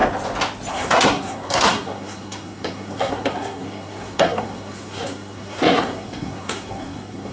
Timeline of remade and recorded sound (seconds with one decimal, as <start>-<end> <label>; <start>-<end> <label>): 0.0-0.7 recorded; 0.7-7.3 remade